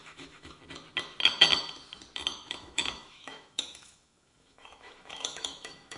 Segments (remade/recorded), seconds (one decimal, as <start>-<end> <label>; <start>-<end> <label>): 0.0-0.6 remade; 0.6-2.3 recorded; 2.3-6.0 remade